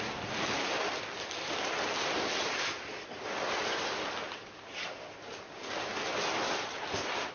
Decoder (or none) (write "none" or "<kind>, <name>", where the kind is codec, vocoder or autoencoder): none